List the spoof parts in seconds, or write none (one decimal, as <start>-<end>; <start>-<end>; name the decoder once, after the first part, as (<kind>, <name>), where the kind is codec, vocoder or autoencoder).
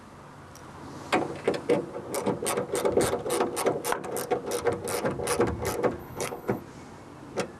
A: 6.0-6.6 (codec, HILCodec)